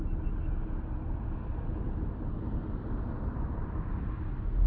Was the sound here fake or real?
real